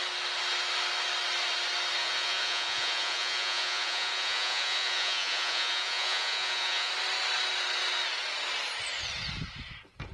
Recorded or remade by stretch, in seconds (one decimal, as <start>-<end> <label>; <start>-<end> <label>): 0.0-2.0 recorded; 2.0-6.9 remade; 6.9-10.1 recorded